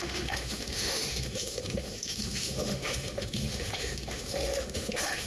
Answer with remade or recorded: remade